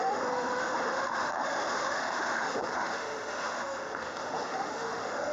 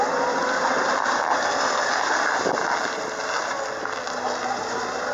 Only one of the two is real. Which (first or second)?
second